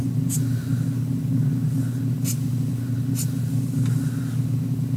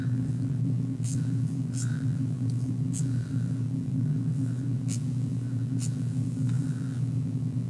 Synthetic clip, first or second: second